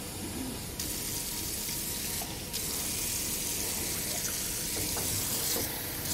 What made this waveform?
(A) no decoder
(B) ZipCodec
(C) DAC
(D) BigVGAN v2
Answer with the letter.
A